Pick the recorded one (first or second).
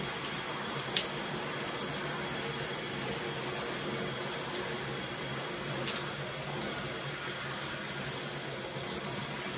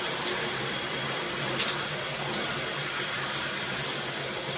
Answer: first